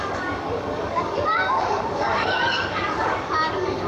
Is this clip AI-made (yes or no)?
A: yes